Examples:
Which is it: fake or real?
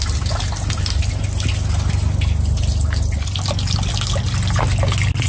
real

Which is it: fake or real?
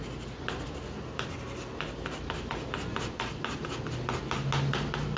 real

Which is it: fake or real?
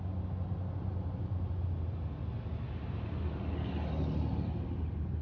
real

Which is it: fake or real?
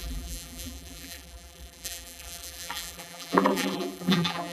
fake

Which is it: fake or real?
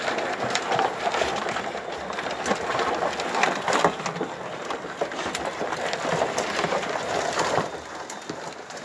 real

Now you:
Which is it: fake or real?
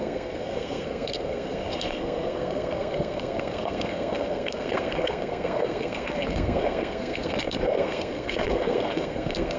fake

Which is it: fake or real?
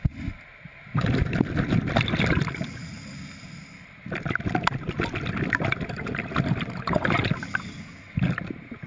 real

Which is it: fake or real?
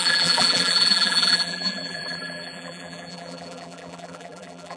fake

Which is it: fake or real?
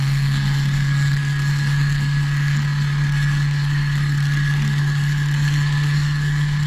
fake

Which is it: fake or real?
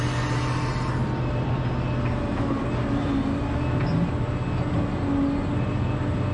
real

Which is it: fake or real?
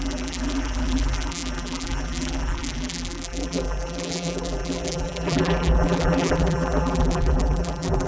fake